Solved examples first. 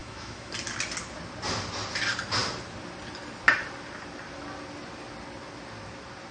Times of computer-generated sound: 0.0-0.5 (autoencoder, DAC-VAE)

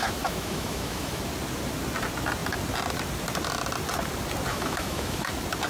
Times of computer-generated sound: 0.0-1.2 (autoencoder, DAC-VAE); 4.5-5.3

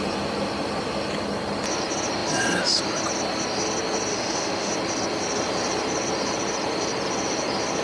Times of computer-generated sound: 4.1-4.7 (autoencoder, DAC-VAE)

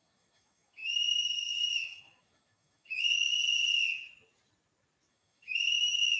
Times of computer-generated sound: 0.0-3.4 (autoencoder, DAC-VAE); 5.1-6.2

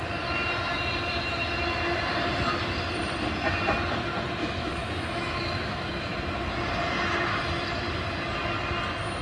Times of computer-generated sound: 4.4-6.1 (autoencoder, DAC-VAE)

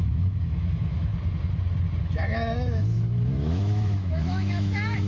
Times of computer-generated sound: 0.0-1.1 (autoencoder, DAC-VAE); 2.0-5.1

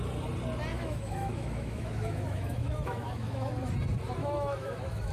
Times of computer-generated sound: 0.7-3.5 (autoencoder, DAC-VAE); 4.2-5.1